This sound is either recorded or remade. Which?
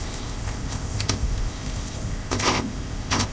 remade